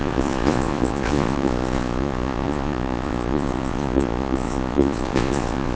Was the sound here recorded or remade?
remade